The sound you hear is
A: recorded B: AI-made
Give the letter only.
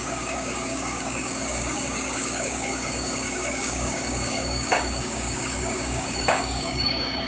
B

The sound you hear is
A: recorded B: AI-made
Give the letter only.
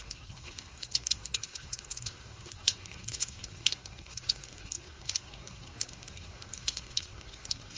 B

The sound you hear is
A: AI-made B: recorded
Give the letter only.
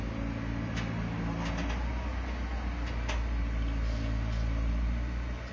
B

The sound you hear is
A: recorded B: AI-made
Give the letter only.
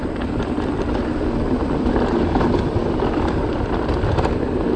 A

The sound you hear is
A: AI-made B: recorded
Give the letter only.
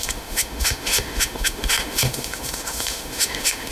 A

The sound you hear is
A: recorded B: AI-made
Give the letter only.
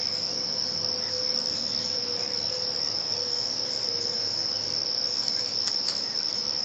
B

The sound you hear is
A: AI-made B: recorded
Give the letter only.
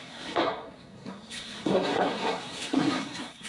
A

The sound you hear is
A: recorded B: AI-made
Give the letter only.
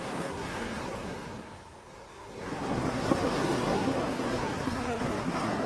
B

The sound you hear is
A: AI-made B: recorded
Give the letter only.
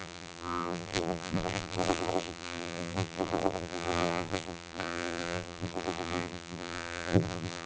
A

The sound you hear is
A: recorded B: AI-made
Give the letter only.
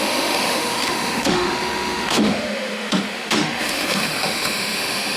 B